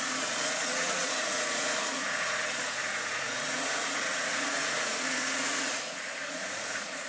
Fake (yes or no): yes